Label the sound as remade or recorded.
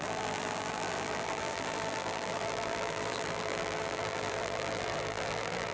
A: remade